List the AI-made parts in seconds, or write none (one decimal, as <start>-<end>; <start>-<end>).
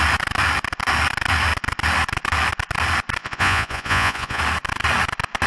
3.2-4.4